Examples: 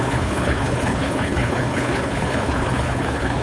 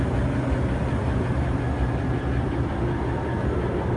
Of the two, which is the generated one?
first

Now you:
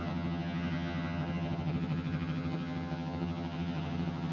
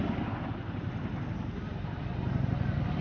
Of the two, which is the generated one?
first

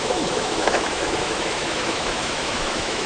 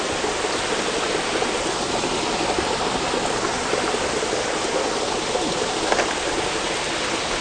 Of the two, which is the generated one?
first